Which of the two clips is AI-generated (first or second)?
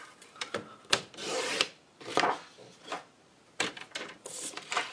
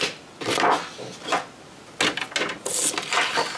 first